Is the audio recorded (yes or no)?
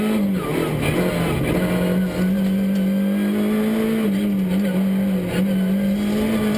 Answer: yes